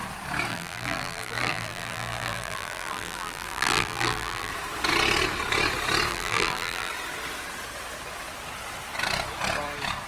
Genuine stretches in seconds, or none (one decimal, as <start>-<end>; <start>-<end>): 0.0-0.5; 4.5-6.1; 6.9-10.1